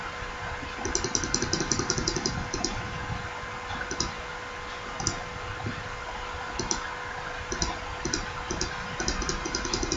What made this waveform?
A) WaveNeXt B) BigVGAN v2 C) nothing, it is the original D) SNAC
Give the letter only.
C